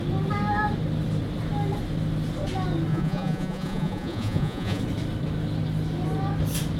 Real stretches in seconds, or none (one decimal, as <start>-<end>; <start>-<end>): 0.0-2.9; 4.8-6.8